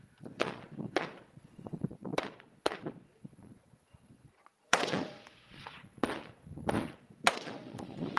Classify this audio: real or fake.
fake